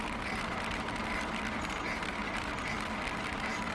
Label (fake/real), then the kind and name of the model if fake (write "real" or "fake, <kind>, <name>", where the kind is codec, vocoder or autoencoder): real